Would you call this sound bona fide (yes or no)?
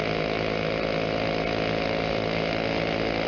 yes